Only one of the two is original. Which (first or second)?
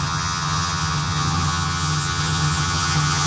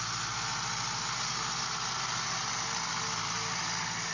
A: second